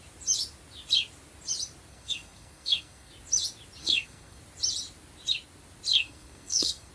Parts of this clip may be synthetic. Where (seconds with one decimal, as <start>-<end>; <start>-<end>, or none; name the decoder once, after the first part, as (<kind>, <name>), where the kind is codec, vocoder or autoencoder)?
1.9-3.1 (codec, SNAC); 3.8-4.4; 5.9-6.9